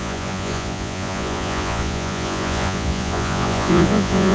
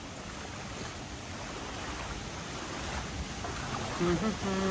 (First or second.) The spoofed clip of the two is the first